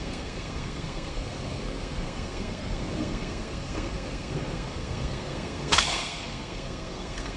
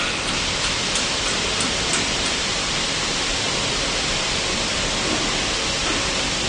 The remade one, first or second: first